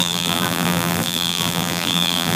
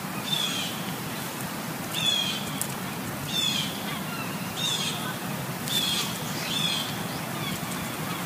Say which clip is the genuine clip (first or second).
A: second